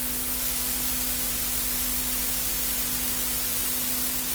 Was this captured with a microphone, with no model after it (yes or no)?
yes